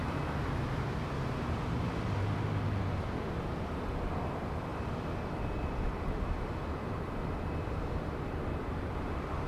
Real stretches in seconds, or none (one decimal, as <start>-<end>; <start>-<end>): 1.6-4.7; 7.6-9.5